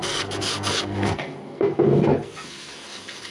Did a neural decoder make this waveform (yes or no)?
yes